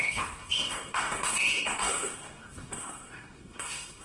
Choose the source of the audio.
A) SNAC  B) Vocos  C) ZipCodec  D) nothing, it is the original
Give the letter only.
A